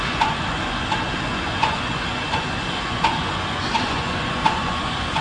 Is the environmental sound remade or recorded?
remade